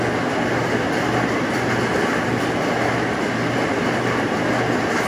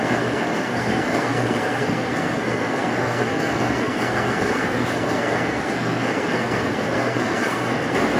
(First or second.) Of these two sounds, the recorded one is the first